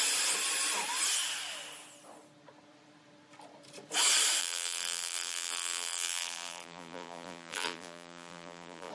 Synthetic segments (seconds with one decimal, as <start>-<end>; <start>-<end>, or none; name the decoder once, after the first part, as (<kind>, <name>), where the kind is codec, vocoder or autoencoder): 4.4-8.9 (vocoder, BigVGAN v2)